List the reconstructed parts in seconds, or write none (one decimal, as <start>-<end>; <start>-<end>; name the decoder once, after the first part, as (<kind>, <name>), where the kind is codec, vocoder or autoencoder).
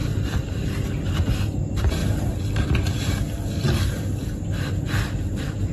0.0-0.7 (vocoder, BigVGAN v2)